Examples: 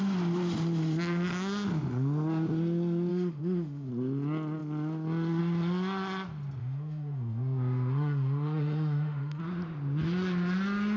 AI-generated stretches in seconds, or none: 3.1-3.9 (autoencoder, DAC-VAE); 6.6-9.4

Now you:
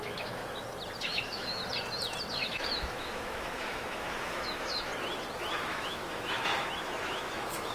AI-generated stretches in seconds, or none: 0.0-0.4 (autoencoder, DAC-VAE); 1.0-1.6; 2.3-4.9; 5.4-7.7

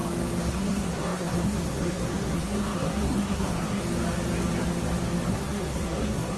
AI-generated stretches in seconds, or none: 0.5-3.8 (codec, SNAC); 5.3-6.4

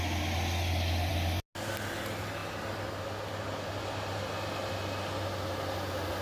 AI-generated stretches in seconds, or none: none

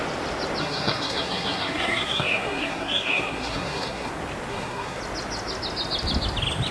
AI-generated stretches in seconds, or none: 0.6-4.1 (codec, SNAC); 4.5-5.0

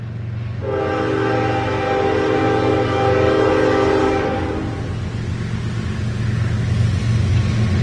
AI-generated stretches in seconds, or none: 2.4-3.5 (codec, DAC); 4.0-4.6

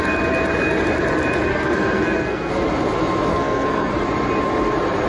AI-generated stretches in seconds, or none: 1.5-2.5 (codec, SNAC); 3.3-3.9

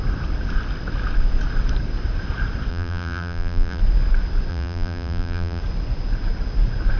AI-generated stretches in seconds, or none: 2.7-3.8 (vocoder, BigVGAN v2); 4.5-5.6